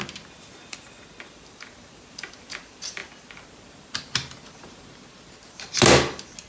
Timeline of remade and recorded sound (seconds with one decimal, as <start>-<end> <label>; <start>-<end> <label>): 0.0-6.5 recorded